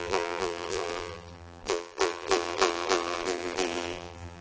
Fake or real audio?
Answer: fake